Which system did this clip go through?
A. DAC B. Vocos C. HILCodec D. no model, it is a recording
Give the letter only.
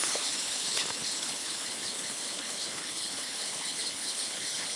C